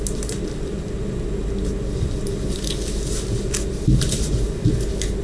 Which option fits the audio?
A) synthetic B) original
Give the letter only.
B